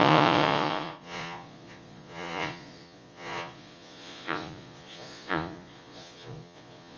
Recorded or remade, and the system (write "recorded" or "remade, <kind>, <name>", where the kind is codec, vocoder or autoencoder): remade, vocoder, Vocos